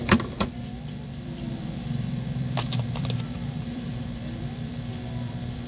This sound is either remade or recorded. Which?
remade